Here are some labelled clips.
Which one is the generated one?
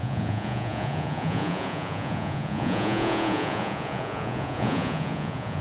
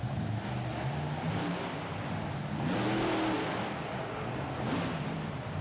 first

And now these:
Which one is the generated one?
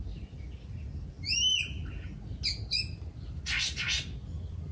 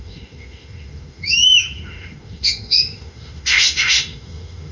second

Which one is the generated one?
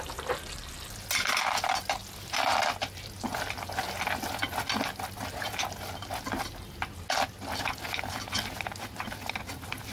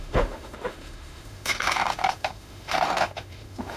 second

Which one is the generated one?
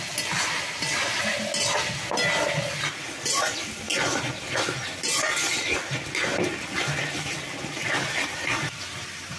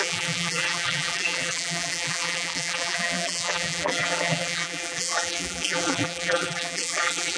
second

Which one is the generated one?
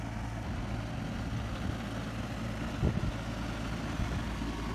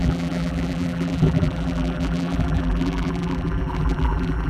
second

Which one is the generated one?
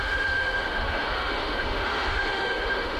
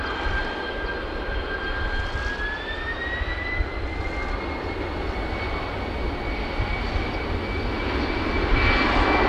first